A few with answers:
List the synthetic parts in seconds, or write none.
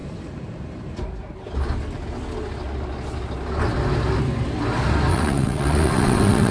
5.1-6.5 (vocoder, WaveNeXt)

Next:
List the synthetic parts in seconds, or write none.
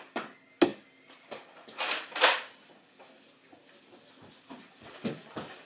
none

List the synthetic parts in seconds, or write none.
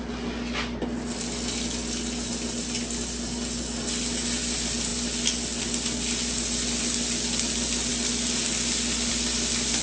none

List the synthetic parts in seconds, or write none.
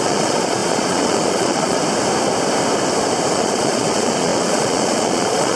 0.0-1.8 (vocoder, Vocos); 3.3-5.6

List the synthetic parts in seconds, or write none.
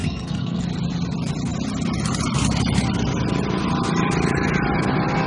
0.0-0.6 (codec, SNAC)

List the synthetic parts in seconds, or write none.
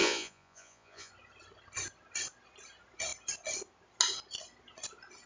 0.0-1.1 (vocoder, Vocos)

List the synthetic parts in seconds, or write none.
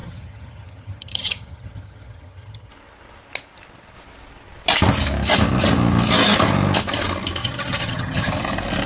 0.0-2.7 (vocoder, HiFi-GAN); 7.4-8.3